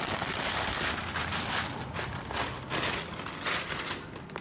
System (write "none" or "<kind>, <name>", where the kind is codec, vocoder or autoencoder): none